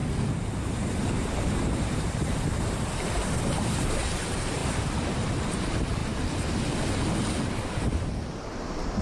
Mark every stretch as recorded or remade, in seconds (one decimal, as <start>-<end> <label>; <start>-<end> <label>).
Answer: 0.0-0.7 recorded; 0.7-6.0 remade; 6.0-7.5 recorded; 7.5-9.0 remade